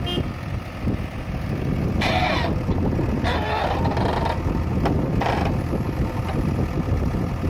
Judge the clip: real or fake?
real